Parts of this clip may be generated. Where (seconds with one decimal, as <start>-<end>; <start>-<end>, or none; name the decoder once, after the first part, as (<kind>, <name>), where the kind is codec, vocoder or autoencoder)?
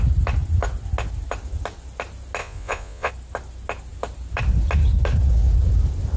2.4-3.1 (vocoder, Vocos)